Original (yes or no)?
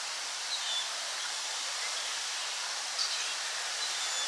no